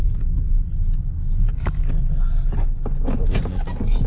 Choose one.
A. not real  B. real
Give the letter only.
B